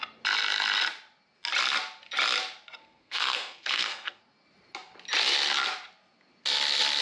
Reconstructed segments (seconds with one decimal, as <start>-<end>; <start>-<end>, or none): 2.8-4.2